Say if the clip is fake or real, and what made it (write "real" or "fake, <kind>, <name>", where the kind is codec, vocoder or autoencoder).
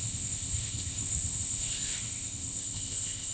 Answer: fake, codec, ZipCodec